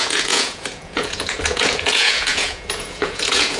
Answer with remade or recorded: remade